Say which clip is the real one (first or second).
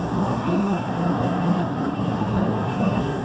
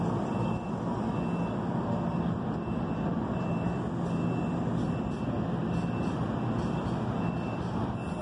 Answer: second